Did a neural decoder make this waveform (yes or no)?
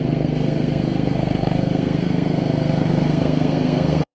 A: yes